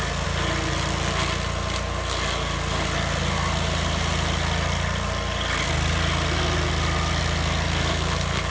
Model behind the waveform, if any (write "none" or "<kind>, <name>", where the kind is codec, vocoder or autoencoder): none